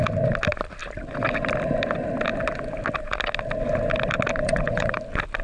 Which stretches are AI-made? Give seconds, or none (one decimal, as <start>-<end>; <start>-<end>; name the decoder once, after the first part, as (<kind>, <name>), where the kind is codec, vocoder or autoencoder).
4.4-5.0 (vocoder, Vocos)